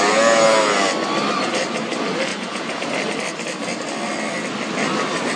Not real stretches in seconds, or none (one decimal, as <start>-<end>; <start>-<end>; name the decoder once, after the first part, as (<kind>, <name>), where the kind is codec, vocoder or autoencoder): 2.3-2.9 (vocoder, Vocos)